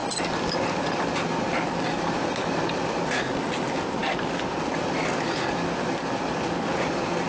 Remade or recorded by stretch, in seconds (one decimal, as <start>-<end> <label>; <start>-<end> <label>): 0.0-7.3 recorded